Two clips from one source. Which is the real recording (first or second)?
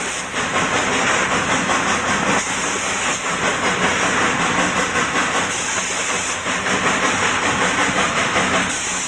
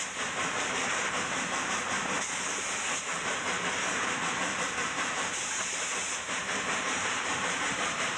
first